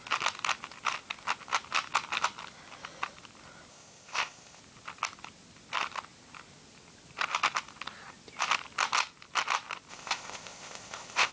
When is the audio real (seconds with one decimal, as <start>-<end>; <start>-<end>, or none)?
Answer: 0.0-3.7; 4.6-9.9